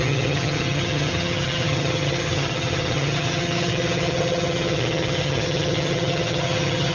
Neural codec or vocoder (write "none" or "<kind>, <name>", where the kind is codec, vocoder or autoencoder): vocoder, HiFi-GAN